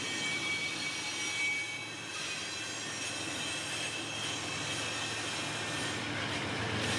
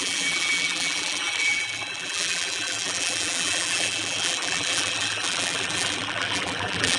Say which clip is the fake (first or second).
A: second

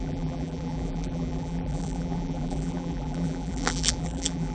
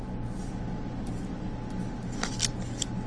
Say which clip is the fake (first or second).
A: first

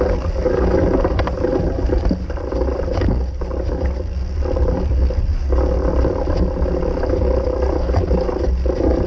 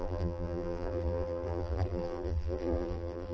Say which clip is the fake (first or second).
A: second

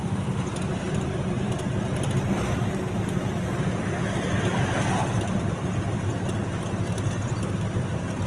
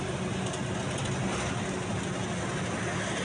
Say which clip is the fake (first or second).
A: first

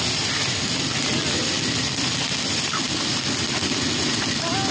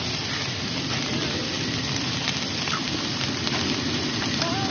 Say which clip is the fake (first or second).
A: second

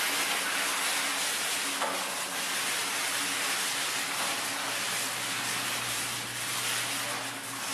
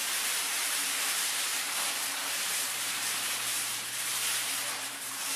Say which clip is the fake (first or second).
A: second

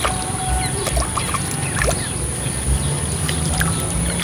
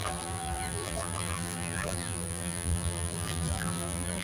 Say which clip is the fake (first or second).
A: second